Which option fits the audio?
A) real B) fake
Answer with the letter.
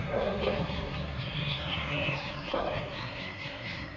B